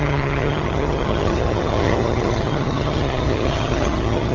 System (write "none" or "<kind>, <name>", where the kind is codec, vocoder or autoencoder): vocoder, HiFi-GAN